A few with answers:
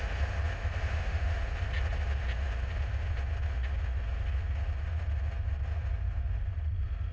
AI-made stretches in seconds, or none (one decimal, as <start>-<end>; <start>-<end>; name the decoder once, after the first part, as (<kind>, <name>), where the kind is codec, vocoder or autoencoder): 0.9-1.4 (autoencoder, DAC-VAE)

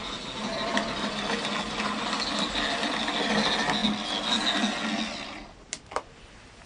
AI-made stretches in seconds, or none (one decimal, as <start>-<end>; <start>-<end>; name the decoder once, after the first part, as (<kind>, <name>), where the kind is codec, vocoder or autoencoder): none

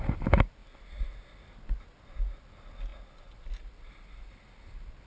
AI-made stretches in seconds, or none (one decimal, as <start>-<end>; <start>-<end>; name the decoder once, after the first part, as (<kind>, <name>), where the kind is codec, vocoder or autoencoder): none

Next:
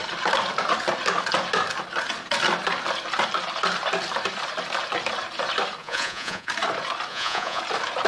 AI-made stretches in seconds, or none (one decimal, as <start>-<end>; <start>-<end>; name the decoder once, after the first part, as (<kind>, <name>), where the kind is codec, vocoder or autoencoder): 5.8-6.5 (vocoder, Vocos); 7.1-7.6

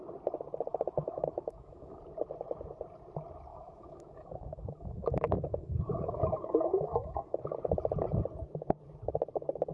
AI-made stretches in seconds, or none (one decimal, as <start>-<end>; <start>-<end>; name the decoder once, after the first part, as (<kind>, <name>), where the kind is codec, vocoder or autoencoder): 0.7-2.0 (autoencoder, DAC-VAE); 3.5-7.4